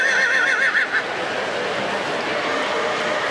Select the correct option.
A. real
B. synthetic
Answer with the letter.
A